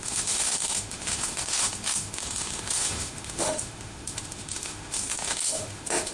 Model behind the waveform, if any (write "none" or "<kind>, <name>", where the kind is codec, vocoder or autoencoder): autoencoder, DAC-VAE